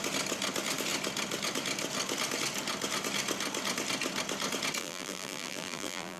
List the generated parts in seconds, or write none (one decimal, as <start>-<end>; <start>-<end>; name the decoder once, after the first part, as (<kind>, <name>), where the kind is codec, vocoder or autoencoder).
4.8-6.2 (vocoder, BigVGAN v2)